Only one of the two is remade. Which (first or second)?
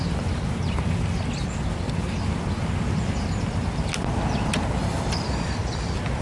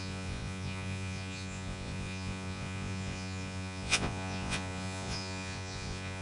second